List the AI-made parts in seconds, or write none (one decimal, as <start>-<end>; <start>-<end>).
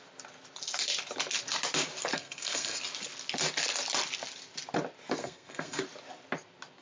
2.1-2.8; 5.2-5.8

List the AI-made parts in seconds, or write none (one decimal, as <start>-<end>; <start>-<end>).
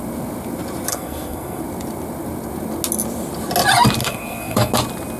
0.9-1.6; 4.0-4.7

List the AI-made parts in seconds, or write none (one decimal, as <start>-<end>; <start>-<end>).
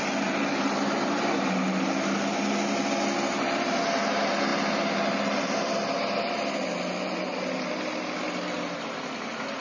none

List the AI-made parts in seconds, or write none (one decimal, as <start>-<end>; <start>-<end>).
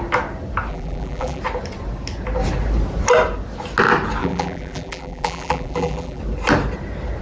0.7-1.4; 4.2-6.2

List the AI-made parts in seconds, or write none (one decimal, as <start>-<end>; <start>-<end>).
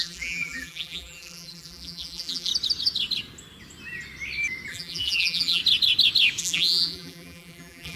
0.0-2.5; 4.7-5.6; 6.4-8.0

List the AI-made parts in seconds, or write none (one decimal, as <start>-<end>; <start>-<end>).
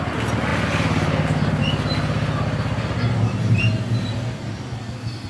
none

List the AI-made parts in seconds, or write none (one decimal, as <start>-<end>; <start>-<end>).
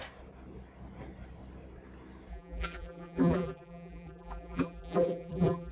2.3-5.7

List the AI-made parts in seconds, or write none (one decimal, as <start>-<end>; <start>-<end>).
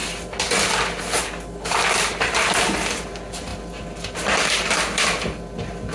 none